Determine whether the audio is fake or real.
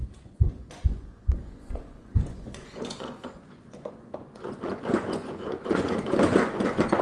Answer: fake